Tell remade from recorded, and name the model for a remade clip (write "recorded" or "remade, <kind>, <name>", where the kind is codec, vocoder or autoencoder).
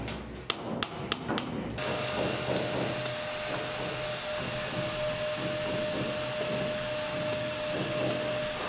recorded